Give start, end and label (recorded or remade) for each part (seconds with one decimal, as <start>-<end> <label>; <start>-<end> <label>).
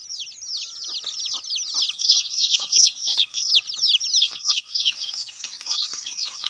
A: 0.0-1.9 recorded; 1.9-3.5 remade; 3.5-4.2 recorded; 4.2-6.5 remade